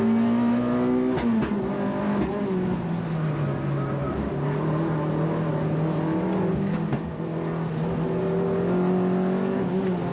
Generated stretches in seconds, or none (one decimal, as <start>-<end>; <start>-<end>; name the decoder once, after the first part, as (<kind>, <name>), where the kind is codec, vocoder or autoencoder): none